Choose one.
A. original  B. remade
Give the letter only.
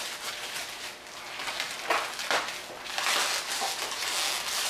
A